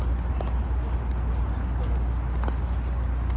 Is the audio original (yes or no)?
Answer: yes